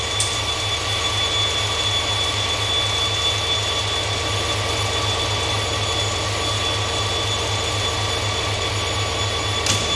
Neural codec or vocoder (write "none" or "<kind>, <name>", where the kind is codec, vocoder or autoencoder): none